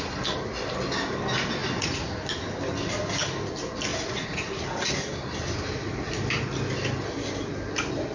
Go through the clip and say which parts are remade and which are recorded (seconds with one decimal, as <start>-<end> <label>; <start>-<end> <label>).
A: 0.0-1.6 recorded; 1.6-2.1 remade; 2.1-3.9 recorded; 3.9-4.9 remade; 4.9-8.1 recorded